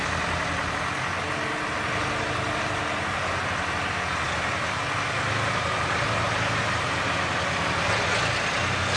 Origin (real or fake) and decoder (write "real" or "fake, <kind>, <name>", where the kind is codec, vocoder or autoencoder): real